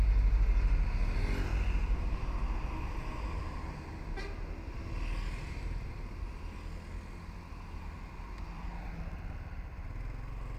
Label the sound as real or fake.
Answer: real